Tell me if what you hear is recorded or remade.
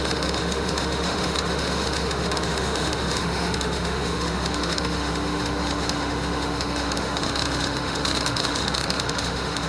remade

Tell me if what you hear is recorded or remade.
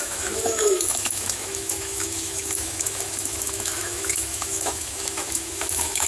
remade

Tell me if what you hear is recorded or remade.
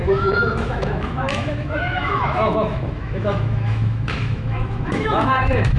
remade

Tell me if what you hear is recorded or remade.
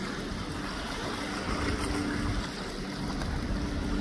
recorded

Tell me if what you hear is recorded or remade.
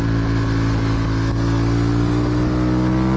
recorded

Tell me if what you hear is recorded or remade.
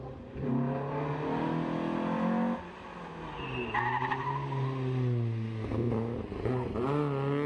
recorded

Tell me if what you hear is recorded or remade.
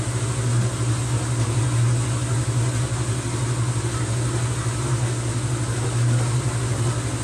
recorded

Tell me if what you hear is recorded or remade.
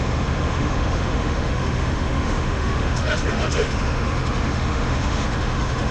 remade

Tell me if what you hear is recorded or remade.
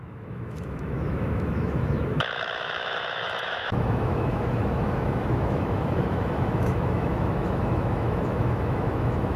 remade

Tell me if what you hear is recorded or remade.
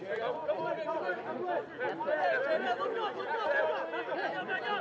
recorded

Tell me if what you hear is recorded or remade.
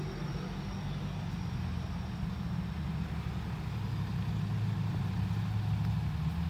recorded